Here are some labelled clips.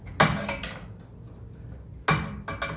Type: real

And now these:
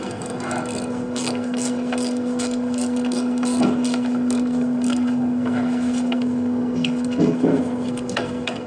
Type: fake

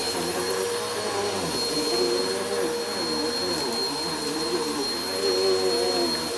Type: real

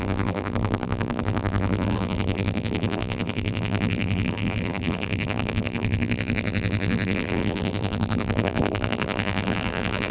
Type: fake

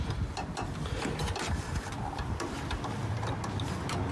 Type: real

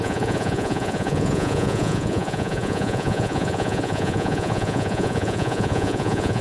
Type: fake